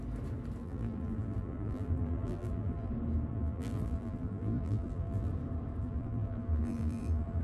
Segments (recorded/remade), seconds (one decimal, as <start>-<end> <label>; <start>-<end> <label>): 0.0-0.6 recorded; 0.6-2.9 remade; 2.9-3.3 recorded; 3.3-5.3 remade; 5.3-5.8 recorded; 5.8-7.4 remade